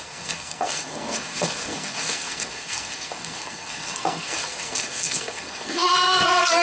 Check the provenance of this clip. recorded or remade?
remade